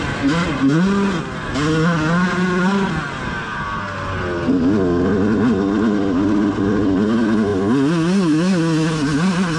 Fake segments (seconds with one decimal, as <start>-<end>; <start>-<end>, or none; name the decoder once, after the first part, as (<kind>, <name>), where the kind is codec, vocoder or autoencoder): none